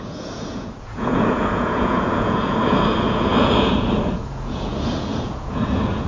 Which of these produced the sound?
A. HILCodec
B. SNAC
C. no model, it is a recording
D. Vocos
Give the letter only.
D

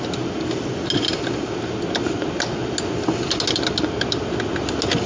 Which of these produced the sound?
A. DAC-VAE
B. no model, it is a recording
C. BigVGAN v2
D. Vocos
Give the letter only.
B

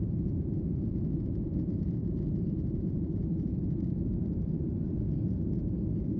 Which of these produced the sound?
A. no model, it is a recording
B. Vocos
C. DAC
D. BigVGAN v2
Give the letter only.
B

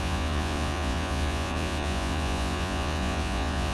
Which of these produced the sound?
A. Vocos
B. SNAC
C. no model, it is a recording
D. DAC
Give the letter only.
A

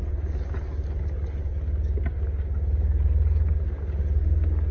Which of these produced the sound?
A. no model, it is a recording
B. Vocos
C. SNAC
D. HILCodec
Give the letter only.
A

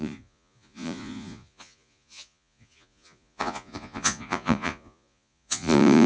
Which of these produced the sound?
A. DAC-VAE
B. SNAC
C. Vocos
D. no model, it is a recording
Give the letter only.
C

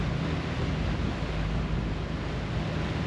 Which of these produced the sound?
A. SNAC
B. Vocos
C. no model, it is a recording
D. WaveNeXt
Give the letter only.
C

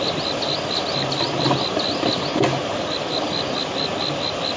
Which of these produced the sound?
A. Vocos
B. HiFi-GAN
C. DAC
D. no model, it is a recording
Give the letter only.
D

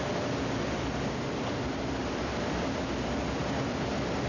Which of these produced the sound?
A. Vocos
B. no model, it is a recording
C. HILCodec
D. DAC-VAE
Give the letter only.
B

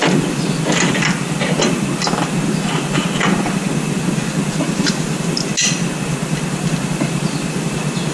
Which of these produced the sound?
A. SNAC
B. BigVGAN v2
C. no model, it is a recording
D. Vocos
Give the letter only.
C